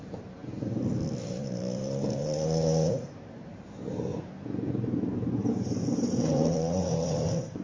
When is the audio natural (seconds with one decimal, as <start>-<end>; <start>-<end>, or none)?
0.4-1.3; 4.1-4.7